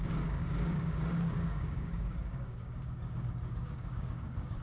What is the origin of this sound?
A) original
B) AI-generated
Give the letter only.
B